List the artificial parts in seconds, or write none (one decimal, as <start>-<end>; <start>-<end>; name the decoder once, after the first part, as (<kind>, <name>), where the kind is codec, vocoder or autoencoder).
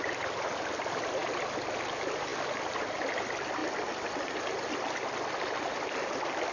none